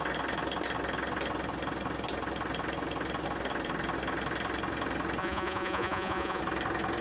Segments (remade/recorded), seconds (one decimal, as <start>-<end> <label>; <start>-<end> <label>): 0.0-5.2 recorded; 5.2-6.4 remade; 6.4-7.0 recorded